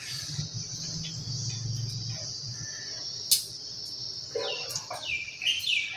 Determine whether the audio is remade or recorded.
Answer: recorded